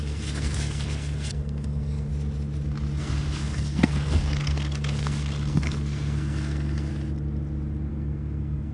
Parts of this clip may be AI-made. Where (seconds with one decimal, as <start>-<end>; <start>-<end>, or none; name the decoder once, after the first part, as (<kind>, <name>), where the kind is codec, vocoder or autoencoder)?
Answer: 0.0-2.1 (codec, SNAC); 3.0-6.9; 7.9-8.7